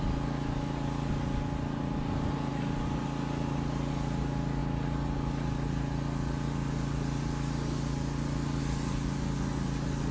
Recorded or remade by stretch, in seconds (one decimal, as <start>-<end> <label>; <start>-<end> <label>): 0.0-10.1 recorded

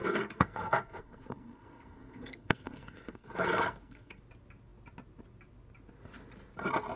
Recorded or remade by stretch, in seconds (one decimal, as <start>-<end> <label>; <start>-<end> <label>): 0.0-4.2 remade; 4.2-7.0 recorded

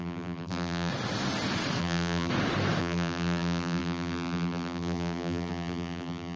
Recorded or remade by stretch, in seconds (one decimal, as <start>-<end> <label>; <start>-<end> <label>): 0.0-0.9 remade; 0.9-1.8 recorded; 1.8-2.3 remade; 2.3-2.8 recorded; 2.8-6.4 remade

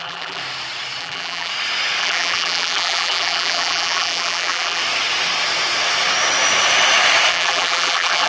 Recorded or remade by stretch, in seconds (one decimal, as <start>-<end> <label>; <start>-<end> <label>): 0.0-0.4 remade; 0.4-1.0 recorded; 1.0-1.5 remade; 1.5-2.0 recorded; 2.0-4.8 remade; 4.8-7.3 recorded; 7.3-8.3 remade

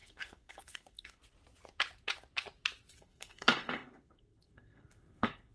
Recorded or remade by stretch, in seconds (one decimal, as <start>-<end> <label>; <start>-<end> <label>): 0.0-1.2 remade; 1.2-3.0 recorded; 3.0-5.5 remade

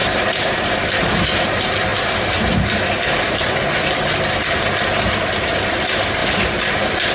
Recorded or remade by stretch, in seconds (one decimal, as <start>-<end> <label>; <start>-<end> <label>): 0.0-0.8 remade; 0.8-6.2 recorded; 6.2-7.1 remade

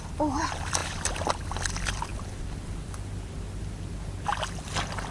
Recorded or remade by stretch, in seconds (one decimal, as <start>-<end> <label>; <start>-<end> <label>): 0.0-5.1 recorded

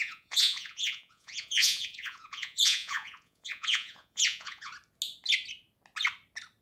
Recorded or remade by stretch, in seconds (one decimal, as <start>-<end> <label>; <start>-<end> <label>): 0.0-4.7 remade; 4.7-6.6 recorded